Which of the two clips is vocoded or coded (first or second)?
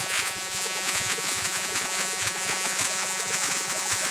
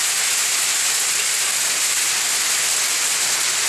first